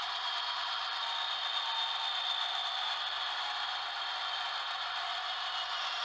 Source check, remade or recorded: recorded